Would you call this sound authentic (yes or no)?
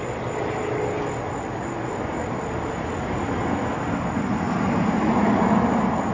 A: yes